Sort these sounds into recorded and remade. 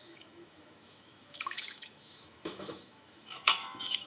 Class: remade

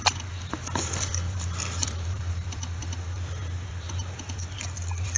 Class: remade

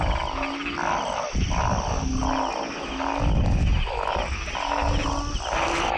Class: recorded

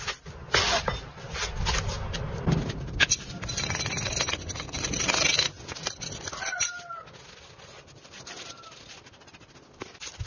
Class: recorded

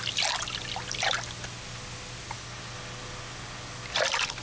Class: recorded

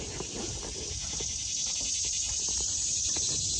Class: recorded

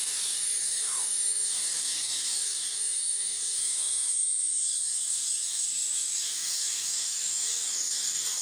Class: remade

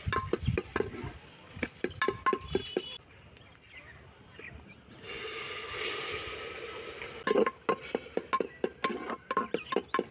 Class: recorded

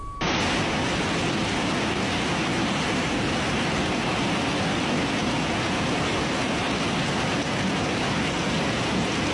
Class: recorded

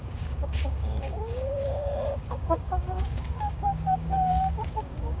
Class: remade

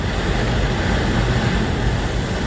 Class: recorded